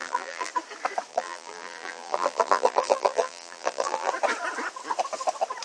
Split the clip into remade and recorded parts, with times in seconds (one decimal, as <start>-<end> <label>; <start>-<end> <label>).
0.0-0.5 remade; 0.5-1.1 recorded; 1.1-4.1 remade; 4.1-5.6 recorded